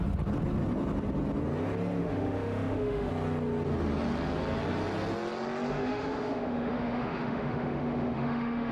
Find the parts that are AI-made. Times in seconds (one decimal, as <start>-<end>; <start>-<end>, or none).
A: 2.0-3.1; 5.7-8.7